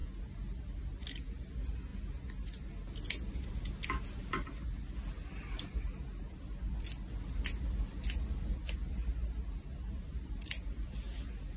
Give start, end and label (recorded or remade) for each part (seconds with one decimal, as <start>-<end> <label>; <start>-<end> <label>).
0.0-11.6 recorded